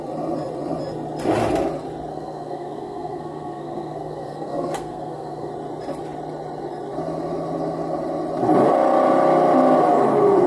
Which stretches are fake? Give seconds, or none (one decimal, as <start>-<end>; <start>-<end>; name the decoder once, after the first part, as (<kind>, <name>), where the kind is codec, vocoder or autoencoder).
2.1-5.5 (codec, SNAC)